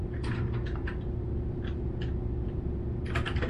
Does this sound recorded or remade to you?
recorded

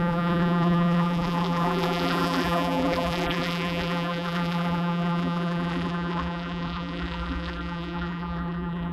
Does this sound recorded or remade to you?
remade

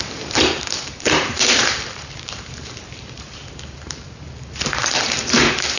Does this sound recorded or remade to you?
remade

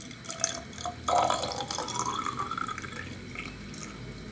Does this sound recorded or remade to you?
recorded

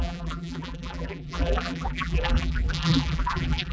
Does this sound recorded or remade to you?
remade